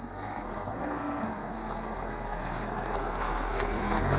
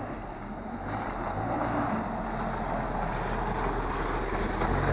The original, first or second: second